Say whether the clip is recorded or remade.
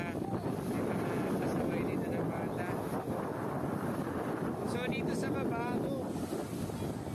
recorded